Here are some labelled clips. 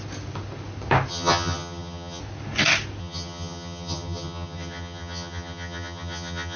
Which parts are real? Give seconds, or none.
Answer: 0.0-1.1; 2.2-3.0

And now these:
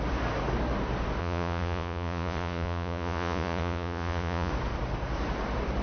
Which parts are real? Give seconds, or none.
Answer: 0.0-1.2; 4.5-5.8